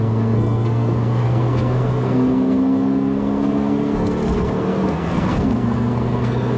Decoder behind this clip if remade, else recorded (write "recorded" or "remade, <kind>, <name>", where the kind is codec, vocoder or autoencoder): remade, codec, SNAC